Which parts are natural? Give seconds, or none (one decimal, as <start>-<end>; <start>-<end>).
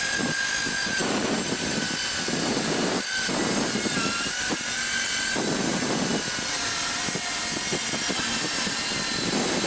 0.0-9.7